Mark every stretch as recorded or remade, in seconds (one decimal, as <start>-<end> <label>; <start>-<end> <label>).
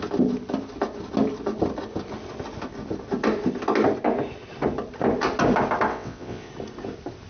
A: 0.0-5.9 recorded; 5.9-6.5 remade; 6.5-7.3 recorded